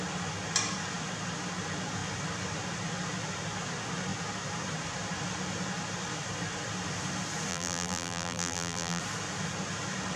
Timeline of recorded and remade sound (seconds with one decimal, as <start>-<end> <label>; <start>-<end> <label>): 0.0-7.5 recorded; 7.5-9.0 remade; 9.0-10.2 recorded